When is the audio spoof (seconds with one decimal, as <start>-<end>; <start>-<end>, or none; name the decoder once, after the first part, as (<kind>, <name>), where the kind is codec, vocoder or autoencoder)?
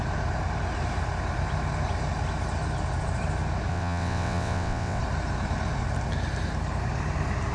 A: 3.7-5.0 (vocoder, WaveNeXt)